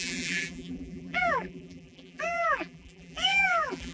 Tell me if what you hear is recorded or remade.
remade